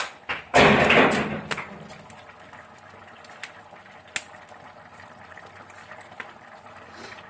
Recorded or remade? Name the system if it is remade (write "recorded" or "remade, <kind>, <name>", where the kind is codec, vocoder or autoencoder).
recorded